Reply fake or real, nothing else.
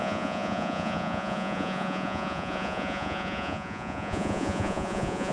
fake